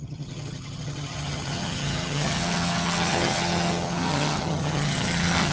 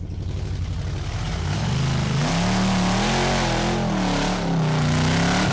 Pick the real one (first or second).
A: second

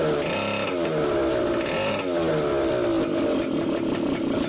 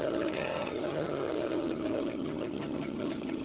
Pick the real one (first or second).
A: first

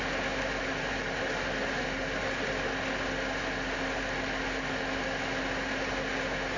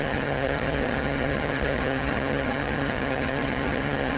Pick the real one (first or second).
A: first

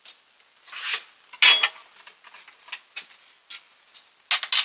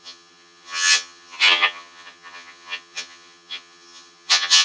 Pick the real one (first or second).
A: first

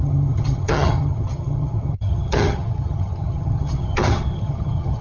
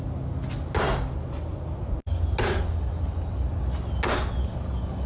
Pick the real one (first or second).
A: second